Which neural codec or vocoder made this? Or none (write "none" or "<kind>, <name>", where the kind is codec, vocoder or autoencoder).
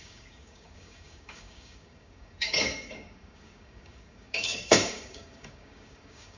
codec, DAC